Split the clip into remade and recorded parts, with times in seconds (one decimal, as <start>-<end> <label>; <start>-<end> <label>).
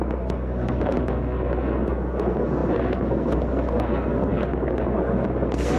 0.0-5.8 remade